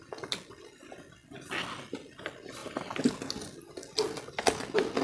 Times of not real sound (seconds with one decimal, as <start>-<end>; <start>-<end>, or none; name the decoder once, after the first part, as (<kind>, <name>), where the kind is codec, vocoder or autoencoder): none